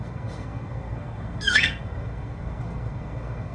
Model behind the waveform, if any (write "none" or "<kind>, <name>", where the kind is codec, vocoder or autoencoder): codec, SNAC